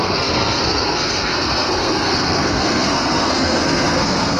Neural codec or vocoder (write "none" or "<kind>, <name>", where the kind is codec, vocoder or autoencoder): codec, SNAC